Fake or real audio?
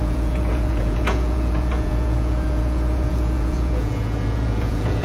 fake